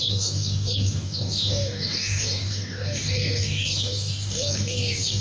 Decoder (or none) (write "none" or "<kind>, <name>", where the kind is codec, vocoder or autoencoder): codec, DAC